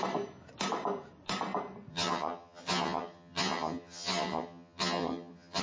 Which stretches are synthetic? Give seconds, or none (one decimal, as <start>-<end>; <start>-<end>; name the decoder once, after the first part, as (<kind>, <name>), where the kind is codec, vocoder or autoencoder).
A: 1.9-5.6 (vocoder, HiFi-GAN)

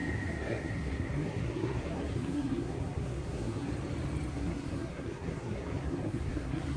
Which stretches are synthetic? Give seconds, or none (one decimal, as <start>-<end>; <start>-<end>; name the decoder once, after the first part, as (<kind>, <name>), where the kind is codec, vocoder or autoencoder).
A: 0.0-3.7 (codec, SNAC); 4.3-6.8